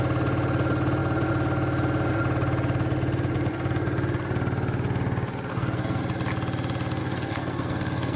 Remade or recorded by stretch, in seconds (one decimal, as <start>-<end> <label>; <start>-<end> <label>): 0.0-5.5 recorded; 5.5-6.0 remade; 6.0-7.0 recorded; 7.0-8.2 remade